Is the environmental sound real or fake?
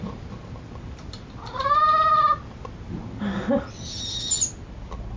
real